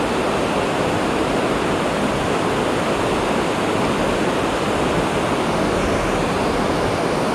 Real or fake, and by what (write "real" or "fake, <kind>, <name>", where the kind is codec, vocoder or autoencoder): real